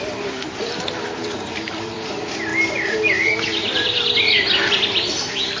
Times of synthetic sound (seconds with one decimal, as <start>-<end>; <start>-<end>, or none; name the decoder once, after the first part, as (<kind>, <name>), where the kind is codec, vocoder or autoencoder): 0.0-2.5 (vocoder, BigVGAN v2); 4.8-5.6